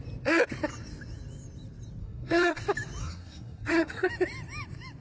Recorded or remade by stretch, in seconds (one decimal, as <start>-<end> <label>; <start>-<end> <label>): 0.0-2.0 recorded; 2.0-2.6 remade; 2.6-3.0 recorded; 3.0-4.1 remade; 4.1-5.0 recorded